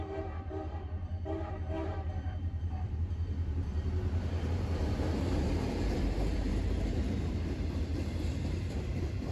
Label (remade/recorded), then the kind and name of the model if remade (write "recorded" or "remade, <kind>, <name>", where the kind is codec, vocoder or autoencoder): remade, vocoder, BigVGAN v2